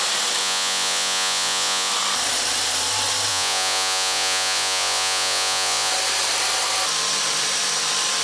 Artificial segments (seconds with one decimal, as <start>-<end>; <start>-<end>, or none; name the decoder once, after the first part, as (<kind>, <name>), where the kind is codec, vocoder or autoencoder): 0.4-1.9 (vocoder, Vocos); 3.3-5.9